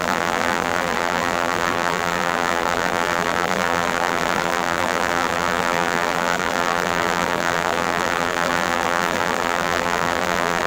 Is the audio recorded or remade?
remade